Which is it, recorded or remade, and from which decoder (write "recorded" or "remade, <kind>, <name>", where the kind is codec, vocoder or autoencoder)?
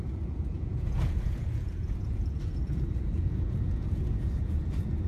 remade, vocoder, Vocos